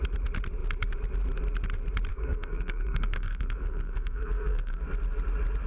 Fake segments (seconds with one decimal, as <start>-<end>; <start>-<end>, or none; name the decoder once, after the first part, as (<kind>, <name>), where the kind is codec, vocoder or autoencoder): 2.1-4.8 (codec, SNAC)